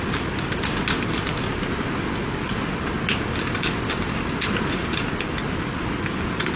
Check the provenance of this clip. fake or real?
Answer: real